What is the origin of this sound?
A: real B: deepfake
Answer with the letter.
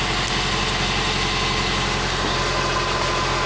A